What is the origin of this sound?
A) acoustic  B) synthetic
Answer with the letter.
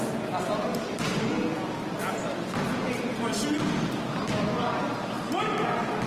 A